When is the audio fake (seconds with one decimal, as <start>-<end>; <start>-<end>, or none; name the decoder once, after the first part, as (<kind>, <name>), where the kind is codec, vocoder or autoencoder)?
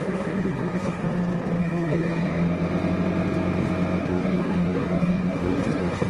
0.0-1.0 (codec, SNAC); 1.6-2.3; 4.0-6.1